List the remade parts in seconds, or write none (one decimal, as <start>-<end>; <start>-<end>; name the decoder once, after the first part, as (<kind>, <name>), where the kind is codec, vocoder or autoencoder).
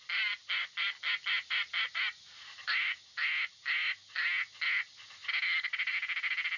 none